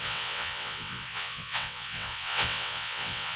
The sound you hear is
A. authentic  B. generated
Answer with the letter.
B